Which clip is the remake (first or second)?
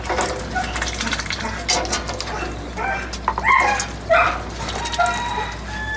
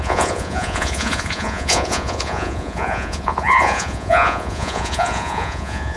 second